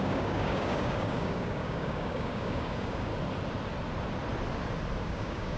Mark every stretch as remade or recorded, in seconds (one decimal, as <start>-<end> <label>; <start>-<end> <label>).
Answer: 0.0-3.1 remade; 3.1-5.0 recorded; 5.0-5.6 remade